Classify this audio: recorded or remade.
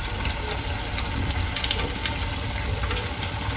recorded